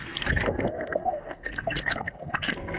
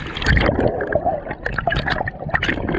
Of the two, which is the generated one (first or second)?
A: first